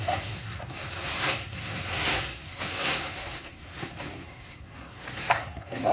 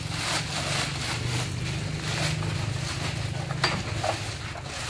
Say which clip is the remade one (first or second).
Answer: first